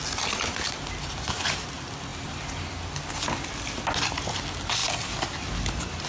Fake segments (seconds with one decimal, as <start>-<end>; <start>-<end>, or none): 2.1-2.7

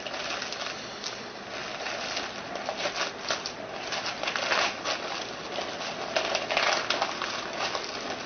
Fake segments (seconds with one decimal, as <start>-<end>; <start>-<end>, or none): none

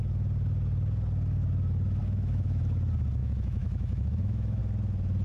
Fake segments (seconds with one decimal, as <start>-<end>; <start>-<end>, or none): 2.0-2.6; 3.2-4.6

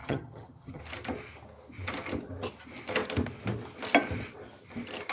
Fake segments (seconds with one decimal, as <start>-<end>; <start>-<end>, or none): 0.0-0.8